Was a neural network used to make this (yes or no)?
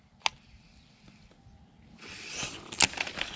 no